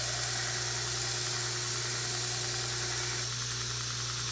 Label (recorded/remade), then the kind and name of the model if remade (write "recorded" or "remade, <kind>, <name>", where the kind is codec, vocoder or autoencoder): recorded